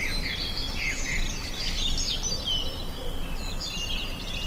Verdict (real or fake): real